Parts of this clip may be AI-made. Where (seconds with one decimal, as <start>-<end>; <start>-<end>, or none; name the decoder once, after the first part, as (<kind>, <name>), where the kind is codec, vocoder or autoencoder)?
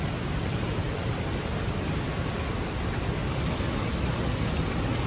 none